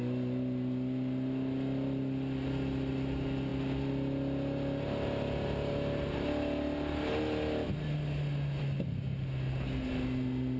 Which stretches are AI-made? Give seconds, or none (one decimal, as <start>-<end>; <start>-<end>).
none